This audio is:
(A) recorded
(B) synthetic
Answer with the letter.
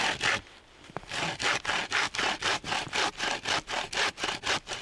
B